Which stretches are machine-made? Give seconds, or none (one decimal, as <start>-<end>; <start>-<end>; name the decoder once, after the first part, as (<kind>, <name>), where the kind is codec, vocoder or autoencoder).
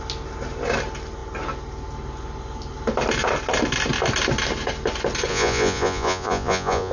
5.3-6.9 (vocoder, Vocos)